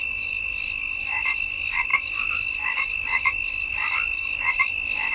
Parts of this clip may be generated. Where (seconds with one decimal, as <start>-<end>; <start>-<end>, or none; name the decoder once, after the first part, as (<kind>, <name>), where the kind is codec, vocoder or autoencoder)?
0.0-5.1 (codec, DAC)